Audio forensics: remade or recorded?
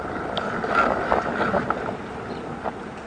recorded